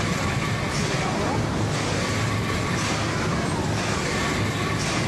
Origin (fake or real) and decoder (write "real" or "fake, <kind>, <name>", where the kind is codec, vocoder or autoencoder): real